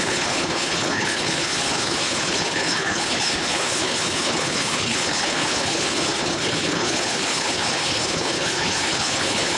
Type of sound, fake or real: fake